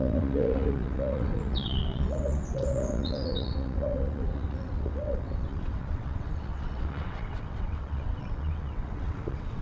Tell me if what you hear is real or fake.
fake